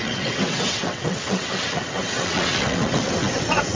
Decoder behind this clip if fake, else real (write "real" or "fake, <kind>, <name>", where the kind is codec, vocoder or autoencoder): fake, vocoder, WaveNeXt